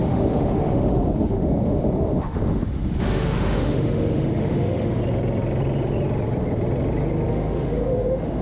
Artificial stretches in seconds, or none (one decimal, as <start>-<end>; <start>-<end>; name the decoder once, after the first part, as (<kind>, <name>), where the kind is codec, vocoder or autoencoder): 0.0-5.0 (autoencoder, DAC-VAE); 7.3-8.4